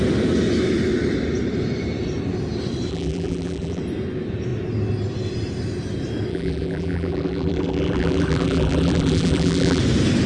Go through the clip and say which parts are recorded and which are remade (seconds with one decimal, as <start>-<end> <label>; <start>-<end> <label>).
0.0-2.9 recorded; 2.9-3.8 remade; 3.8-6.3 recorded; 6.3-9.8 remade; 9.8-10.3 recorded

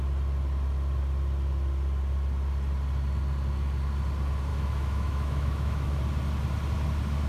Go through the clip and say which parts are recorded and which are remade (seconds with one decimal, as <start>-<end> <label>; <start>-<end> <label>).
0.0-4.5 recorded; 4.5-6.0 remade; 6.0-7.3 recorded

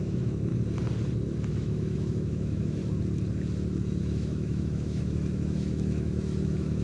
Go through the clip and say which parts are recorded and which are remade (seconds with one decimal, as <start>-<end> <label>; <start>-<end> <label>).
0.0-0.5 remade; 0.5-1.5 recorded; 1.5-2.8 remade; 2.8-4.0 recorded; 4.0-6.8 remade

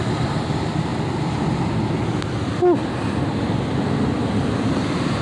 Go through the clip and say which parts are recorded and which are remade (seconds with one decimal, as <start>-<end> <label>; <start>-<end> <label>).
0.0-5.2 recorded

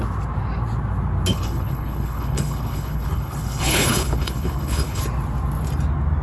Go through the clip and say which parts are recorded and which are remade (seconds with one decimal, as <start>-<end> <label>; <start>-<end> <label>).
0.0-1.3 recorded; 1.3-5.0 remade; 5.0-6.2 recorded

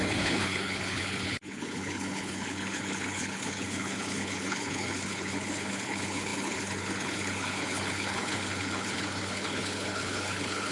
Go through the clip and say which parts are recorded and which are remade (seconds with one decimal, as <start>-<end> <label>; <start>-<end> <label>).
0.0-10.7 remade